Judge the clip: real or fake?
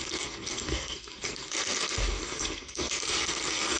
fake